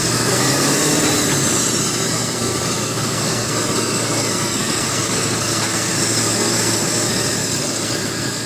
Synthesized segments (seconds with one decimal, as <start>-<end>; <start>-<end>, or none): 0.0-0.9; 1.8-8.5